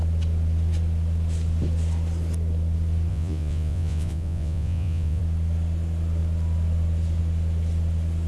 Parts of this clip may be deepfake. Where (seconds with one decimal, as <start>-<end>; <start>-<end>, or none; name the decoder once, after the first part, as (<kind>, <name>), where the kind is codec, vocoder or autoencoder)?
3.1-5.2 (vocoder, Vocos)